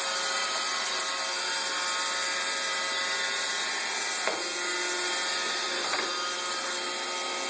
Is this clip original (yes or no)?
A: yes